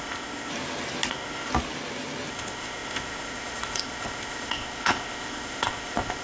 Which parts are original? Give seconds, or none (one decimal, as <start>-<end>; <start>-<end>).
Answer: 0.5-1.1; 1.5-2.3